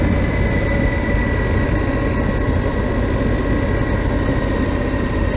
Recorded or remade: recorded